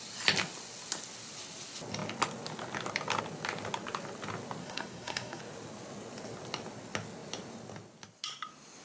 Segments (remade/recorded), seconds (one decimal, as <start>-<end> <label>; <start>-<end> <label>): 0.0-4.6 recorded; 4.6-5.4 remade; 5.4-8.8 recorded